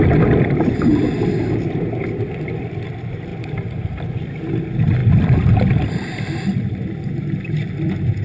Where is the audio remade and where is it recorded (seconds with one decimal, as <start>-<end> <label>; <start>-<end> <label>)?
0.0-0.9 recorded; 0.9-2.4 remade; 2.4-3.3 recorded; 3.3-4.3 remade; 4.3-5.0 recorded; 5.0-7.7 remade; 7.7-8.2 recorded